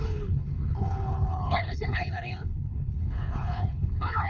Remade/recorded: remade